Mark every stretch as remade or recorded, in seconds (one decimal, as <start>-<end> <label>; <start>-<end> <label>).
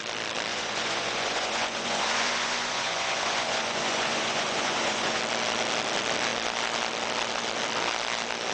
0.0-0.5 recorded; 0.5-5.2 remade; 5.2-8.5 recorded